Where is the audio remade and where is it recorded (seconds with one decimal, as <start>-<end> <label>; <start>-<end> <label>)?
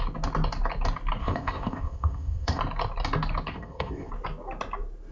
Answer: 0.0-1.2 recorded; 1.2-2.6 remade; 2.6-3.5 recorded; 3.5-4.1 remade; 4.1-5.1 recorded